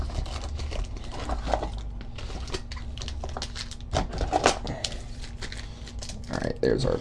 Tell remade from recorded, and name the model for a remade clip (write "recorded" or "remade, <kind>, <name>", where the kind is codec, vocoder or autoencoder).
recorded